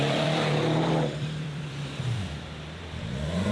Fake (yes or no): yes